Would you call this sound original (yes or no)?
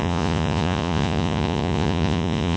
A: no